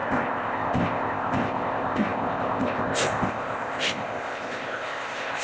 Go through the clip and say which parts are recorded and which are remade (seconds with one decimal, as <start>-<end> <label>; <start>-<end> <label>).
0.0-5.4 remade